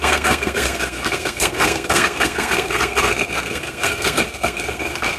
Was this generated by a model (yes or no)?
yes